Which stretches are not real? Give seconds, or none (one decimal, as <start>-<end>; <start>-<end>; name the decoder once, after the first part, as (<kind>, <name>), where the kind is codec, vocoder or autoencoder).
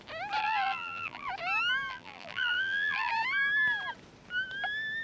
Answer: 0.4-1.3 (vocoder, BigVGAN v2); 1.9-3.1